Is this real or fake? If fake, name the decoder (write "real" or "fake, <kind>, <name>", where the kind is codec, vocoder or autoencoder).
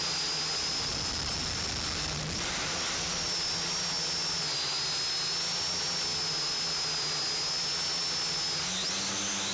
real